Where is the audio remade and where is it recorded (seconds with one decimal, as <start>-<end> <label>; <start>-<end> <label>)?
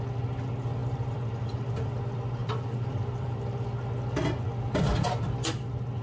0.0-0.8 recorded; 0.8-1.9 remade; 1.9-2.4 recorded; 2.4-3.7 remade; 3.7-6.0 recorded